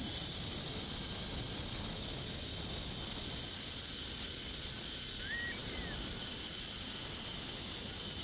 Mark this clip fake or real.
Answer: real